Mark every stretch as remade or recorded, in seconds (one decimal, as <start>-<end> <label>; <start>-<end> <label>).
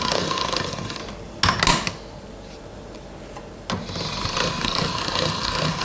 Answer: 0.0-1.0 remade; 1.0-4.5 recorded; 4.5-5.8 remade